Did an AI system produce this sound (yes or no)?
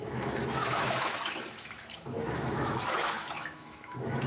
yes